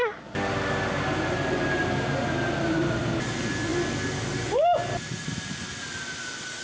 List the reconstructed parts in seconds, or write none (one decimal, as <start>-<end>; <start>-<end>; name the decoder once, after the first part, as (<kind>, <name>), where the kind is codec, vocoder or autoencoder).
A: none